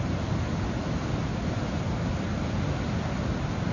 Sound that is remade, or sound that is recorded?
recorded